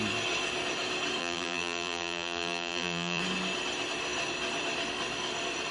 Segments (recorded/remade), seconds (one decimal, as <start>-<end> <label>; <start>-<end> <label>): 0.0-1.2 recorded; 1.2-3.2 remade; 3.2-5.7 recorded